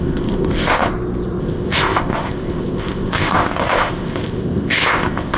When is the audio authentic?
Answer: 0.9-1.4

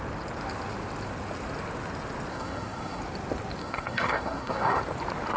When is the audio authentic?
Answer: 0.0-2.3; 3.0-3.6; 4.8-5.4

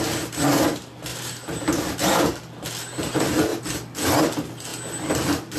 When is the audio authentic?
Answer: 0.0-1.1; 1.9-5.6